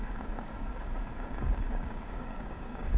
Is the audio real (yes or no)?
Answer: no